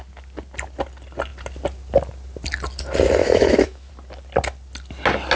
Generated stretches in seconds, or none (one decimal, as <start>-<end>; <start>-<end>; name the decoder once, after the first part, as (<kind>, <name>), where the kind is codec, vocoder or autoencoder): 3.2-3.9 (autoencoder, DAC-VAE)